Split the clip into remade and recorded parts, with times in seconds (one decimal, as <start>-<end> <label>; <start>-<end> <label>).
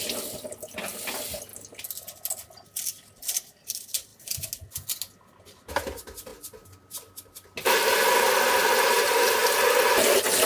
0.0-10.5 recorded